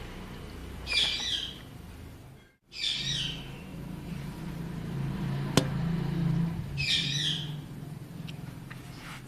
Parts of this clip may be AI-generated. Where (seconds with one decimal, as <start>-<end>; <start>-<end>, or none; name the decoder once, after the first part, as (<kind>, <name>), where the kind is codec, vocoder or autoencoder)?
0.6-1.6 (vocoder, BigVGAN v2); 3.7-4.4